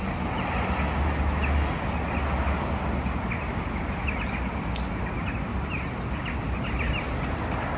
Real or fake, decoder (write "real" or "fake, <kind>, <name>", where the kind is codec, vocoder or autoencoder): real